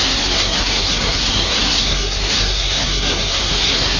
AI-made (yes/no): yes